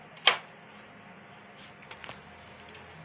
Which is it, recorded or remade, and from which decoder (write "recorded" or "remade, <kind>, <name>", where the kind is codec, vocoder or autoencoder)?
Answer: recorded